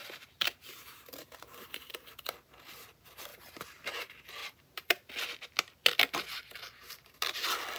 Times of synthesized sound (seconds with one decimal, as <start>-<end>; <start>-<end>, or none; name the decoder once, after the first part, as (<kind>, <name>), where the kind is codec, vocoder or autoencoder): 0.0-2.2 (vocoder, BigVGAN v2); 3.3-3.9; 4.4-5.1